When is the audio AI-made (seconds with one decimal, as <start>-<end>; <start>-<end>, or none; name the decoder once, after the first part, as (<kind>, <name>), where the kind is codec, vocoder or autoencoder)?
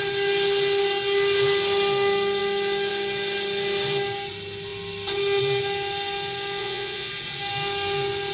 6.6-7.1 (vocoder, Vocos)